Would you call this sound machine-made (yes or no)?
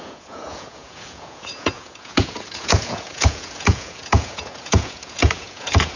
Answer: yes